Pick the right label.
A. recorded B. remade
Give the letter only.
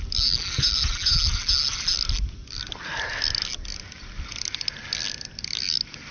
A